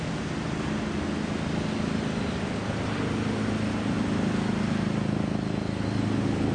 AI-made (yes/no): no